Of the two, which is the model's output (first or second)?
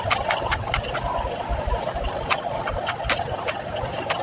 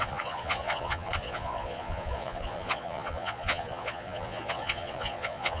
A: second